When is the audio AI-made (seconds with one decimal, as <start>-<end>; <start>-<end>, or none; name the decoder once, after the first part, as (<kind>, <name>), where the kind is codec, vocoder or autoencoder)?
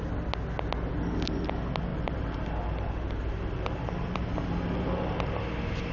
1.9-5.4 (vocoder, BigVGAN v2)